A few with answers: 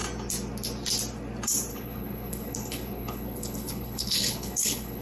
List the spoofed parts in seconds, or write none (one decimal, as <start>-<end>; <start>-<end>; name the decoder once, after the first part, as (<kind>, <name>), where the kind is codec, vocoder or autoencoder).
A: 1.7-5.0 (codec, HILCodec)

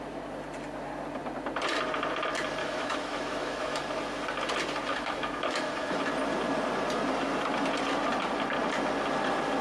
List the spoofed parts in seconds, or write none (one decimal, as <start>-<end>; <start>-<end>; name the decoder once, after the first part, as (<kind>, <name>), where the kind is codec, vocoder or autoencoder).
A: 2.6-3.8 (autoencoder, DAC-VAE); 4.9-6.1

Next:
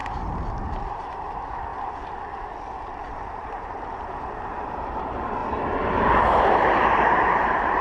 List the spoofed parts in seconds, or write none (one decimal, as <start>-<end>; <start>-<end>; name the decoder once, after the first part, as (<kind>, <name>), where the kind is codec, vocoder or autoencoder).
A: 0.0-1.7 (vocoder, BigVGAN v2); 2.9-5.4; 6.4-7.8

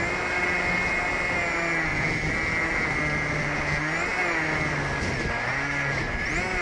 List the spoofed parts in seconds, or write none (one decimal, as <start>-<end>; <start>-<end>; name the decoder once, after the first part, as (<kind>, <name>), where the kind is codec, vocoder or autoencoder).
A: 1.9-3.0 (vocoder, BigVGAN v2)